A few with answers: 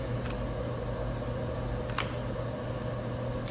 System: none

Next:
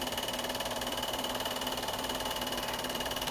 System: vocoder, BigVGAN v2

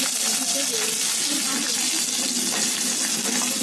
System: none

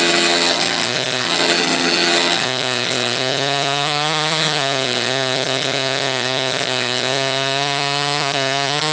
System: vocoder, HiFi-GAN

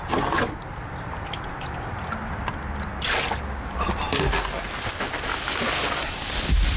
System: none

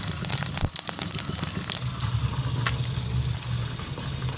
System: none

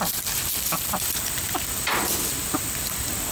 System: none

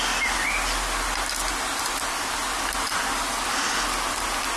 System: none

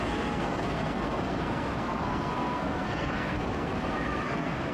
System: codec, SNAC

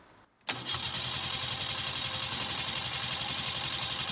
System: none